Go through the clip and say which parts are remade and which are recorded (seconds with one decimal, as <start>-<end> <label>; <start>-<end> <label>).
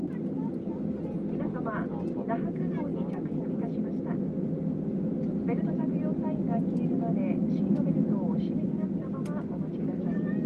0.0-10.5 recorded